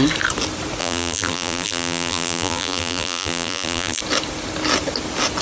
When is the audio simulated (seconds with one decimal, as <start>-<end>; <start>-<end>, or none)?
0.8-4.0